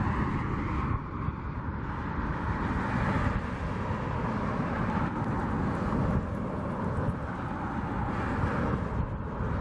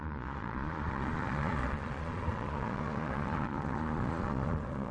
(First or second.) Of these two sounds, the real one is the first